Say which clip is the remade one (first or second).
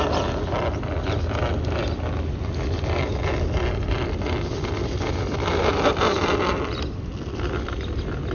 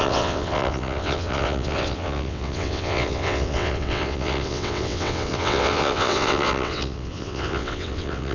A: second